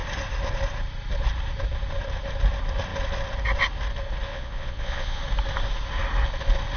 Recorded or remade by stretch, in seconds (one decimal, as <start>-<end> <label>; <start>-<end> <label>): 0.0-4.3 recorded; 4.3-5.2 remade; 5.2-6.8 recorded